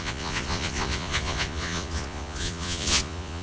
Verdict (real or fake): fake